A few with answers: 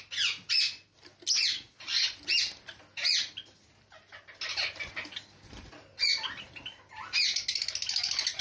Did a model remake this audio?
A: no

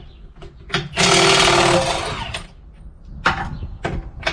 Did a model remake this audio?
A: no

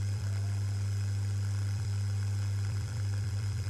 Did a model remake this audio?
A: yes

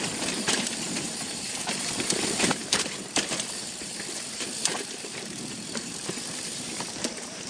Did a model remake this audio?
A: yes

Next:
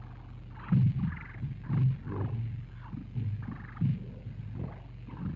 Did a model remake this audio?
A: no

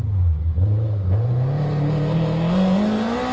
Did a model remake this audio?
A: no